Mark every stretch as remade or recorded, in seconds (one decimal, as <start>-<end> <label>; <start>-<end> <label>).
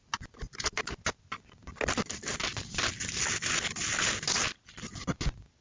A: 0.0-5.6 recorded